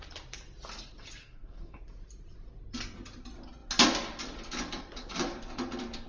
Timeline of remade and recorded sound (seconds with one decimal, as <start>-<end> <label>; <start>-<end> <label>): 0.0-1.2 recorded; 1.2-1.8 remade; 1.8-6.1 recorded